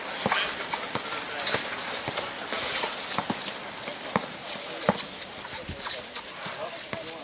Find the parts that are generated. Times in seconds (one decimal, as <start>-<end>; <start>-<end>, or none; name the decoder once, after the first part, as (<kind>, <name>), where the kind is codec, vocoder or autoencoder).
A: none